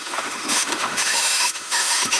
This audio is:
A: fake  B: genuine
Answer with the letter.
A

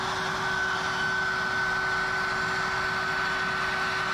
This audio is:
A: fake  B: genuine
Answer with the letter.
B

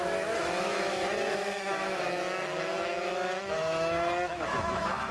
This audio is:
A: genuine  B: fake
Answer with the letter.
B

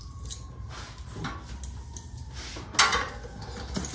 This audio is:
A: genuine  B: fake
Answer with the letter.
A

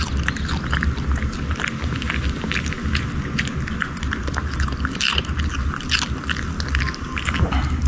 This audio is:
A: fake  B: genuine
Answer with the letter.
B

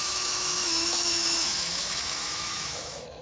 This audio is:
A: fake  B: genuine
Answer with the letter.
A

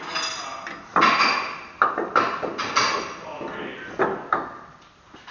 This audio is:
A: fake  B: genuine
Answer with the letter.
B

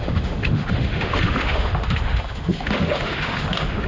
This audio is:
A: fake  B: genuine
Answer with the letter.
A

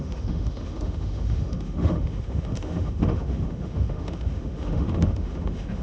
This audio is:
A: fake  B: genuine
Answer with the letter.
A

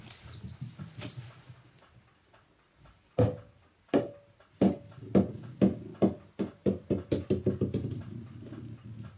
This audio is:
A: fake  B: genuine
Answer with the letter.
B